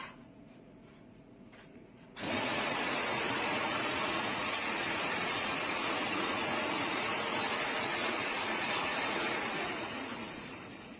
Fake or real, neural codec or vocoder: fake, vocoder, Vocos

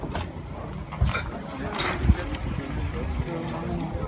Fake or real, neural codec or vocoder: real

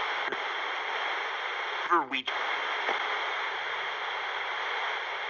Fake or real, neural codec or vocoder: real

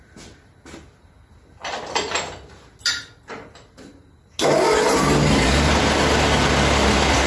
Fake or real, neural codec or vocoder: real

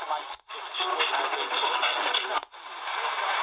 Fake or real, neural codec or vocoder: real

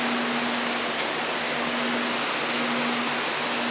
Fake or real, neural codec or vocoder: real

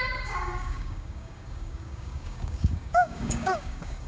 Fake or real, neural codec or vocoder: fake, codec, DAC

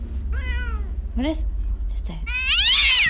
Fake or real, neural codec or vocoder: real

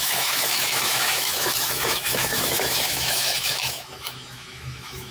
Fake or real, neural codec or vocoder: fake, autoencoder, DAC-VAE